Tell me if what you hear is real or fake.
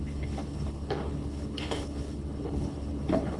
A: fake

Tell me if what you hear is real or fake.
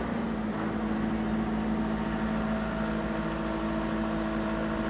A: real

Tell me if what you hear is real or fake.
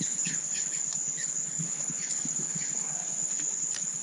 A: fake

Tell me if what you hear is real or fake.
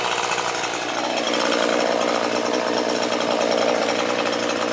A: real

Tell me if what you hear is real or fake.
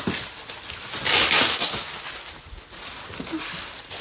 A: real